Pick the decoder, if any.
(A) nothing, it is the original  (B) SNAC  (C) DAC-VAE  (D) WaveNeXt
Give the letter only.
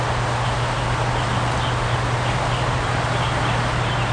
A